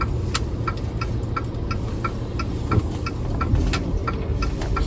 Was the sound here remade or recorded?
recorded